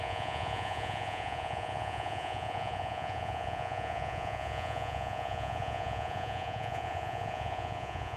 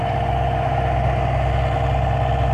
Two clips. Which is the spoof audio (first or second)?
first